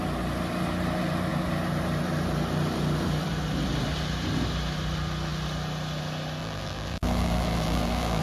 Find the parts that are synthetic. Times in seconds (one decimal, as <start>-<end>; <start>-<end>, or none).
6.4-8.2

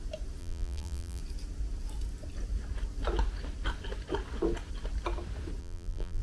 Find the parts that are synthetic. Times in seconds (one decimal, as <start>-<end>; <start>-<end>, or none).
0.4-1.2; 5.6-6.2